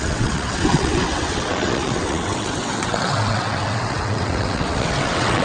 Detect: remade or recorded remade